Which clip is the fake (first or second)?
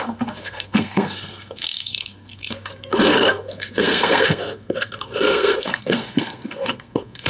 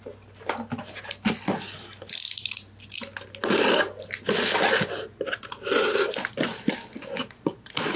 first